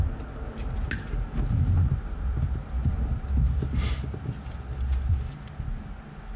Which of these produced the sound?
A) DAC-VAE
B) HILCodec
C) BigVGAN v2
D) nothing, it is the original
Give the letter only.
D